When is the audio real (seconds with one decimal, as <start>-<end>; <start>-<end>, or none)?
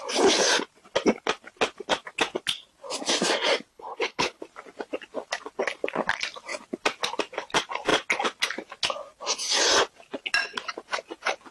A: 0.0-3.7; 4.4-11.5